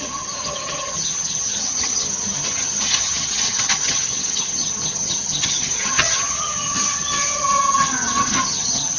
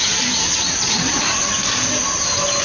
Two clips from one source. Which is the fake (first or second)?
first